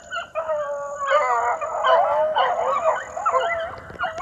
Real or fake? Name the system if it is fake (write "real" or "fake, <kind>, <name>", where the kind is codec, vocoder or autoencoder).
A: real